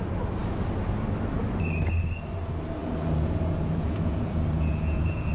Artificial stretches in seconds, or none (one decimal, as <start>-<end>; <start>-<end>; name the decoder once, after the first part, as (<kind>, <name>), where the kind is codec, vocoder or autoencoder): 2.8-5.3 (vocoder, Vocos)